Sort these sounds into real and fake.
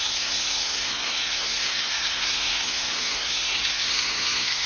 fake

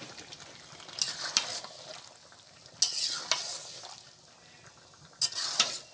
real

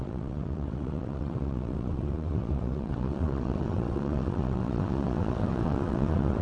fake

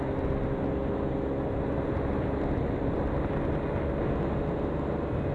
real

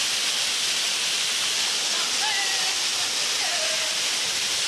real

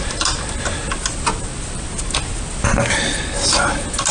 real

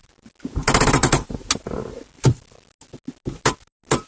real